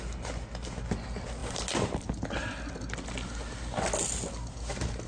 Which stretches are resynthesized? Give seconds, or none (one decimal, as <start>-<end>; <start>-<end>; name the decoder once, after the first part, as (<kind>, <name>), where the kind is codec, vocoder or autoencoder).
none